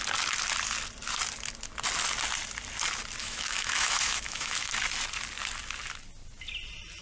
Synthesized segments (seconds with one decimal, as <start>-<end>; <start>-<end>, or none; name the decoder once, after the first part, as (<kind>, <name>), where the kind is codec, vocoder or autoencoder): 3.2-4.7 (autoencoder, DAC-VAE)